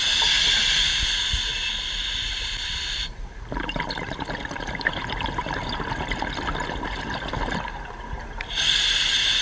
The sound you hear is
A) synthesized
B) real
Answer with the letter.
B